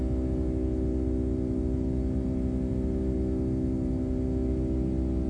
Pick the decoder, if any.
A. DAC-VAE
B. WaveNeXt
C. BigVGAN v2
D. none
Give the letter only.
D